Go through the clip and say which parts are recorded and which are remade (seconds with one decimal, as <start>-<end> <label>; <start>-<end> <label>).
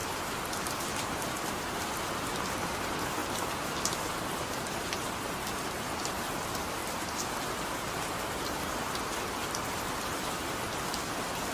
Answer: 0.0-3.2 recorded; 3.2-4.0 remade; 4.0-6.8 recorded; 6.8-7.6 remade; 7.6-11.5 recorded